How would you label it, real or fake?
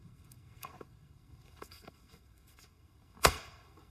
fake